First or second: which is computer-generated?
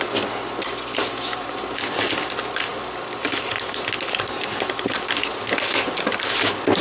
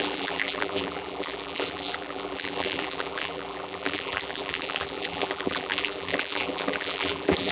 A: second